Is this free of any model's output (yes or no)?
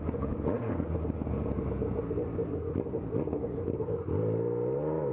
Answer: yes